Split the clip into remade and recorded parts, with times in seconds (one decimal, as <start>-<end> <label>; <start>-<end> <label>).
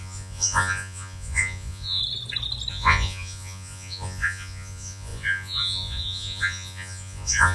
0.0-2.0 remade; 2.0-2.7 recorded; 2.7-7.5 remade